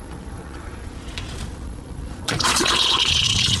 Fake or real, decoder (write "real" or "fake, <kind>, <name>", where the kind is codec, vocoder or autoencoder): fake, vocoder, Vocos